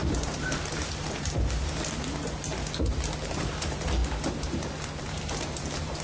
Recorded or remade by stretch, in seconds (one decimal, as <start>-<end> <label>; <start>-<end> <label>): 0.0-2.5 remade; 2.5-3.3 recorded; 3.3-4.0 remade; 4.0-5.0 recorded; 5.0-6.0 remade